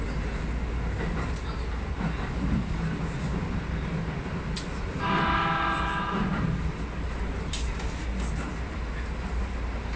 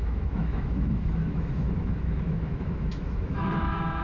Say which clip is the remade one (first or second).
second